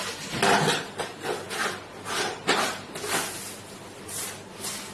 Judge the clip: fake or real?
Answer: real